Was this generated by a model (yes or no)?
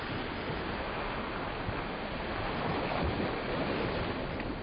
no